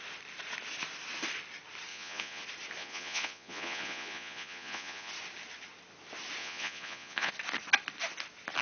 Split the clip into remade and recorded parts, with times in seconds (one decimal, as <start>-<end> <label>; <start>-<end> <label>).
0.0-1.9 recorded; 1.9-2.4 remade; 2.4-2.8 recorded; 2.8-5.1 remade; 5.1-6.4 recorded; 6.4-7.3 remade; 7.3-8.6 recorded